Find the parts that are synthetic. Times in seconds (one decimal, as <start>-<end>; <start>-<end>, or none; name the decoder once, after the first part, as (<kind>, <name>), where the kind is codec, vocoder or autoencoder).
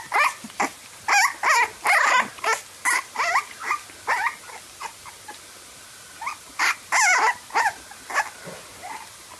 none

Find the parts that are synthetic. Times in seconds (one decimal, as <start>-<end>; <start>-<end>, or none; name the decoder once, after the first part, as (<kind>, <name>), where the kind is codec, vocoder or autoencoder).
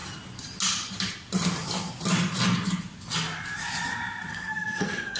4.3-5.2 (codec, SNAC)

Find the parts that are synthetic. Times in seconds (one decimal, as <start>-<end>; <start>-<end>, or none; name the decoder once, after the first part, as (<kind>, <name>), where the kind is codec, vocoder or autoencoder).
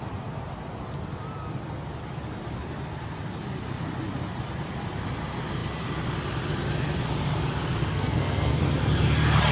7.8-8.6 (codec, SNAC)